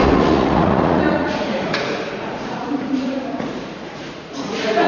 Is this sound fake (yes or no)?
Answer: yes